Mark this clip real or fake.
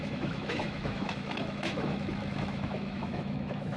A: fake